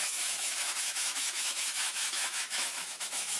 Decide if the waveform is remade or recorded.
remade